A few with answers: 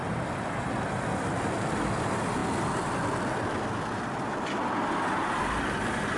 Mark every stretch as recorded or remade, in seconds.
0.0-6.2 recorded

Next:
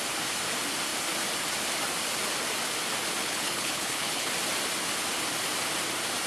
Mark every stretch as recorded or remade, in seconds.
0.0-3.2 recorded; 3.2-4.3 remade; 4.3-6.3 recorded

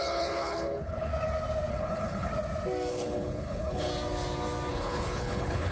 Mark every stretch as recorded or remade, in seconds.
0.0-1.1 remade; 1.1-1.7 recorded; 1.7-2.3 remade; 2.3-2.9 recorded; 2.9-3.9 remade; 3.9-4.7 recorded; 4.7-5.7 remade